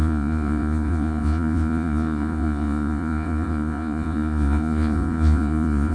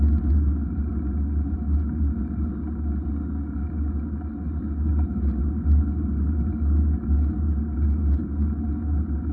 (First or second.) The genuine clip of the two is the second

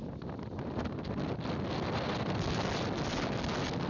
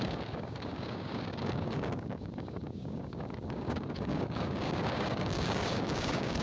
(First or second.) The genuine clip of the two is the first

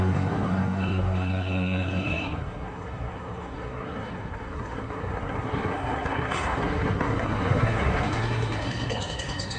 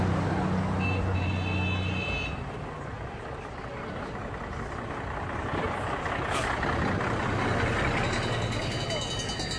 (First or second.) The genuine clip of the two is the second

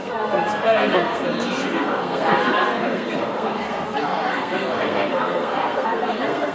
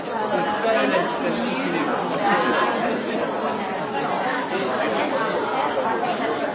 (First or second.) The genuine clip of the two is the second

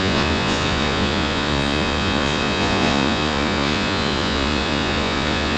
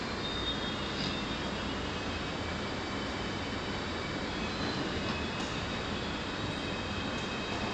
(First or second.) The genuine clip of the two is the second